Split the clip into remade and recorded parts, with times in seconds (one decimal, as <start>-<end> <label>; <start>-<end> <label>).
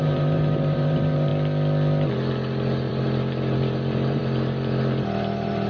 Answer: 0.0-1.3 remade; 1.3-2.1 recorded; 2.1-5.7 remade